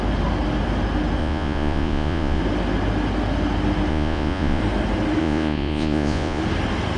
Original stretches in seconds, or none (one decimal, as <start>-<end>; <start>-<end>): 0.0-1.2; 2.4-3.9; 4.6-5.2; 6.4-7.0